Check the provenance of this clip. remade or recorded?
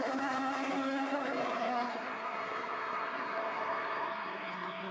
remade